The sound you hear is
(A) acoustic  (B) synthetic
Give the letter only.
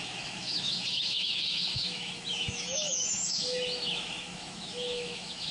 B